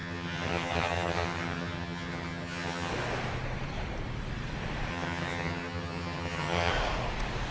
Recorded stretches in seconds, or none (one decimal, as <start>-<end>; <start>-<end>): 2.9-4.9; 6.7-7.5